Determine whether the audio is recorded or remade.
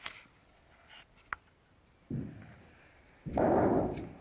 recorded